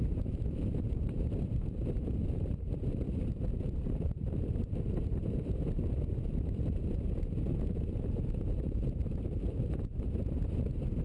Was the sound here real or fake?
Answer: fake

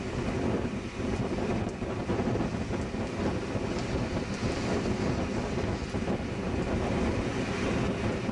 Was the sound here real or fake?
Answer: real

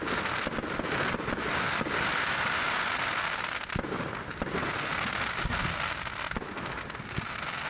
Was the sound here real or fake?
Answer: real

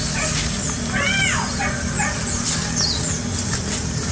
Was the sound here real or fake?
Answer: real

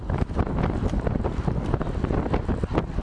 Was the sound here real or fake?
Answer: real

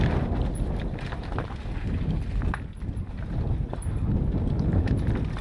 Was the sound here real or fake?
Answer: real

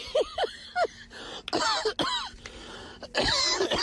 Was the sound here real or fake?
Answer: real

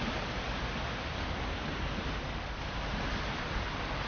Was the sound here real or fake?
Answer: real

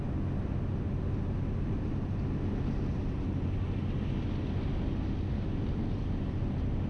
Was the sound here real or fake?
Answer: real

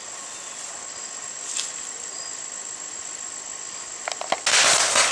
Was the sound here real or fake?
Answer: real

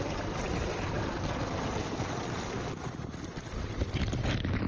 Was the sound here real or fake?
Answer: real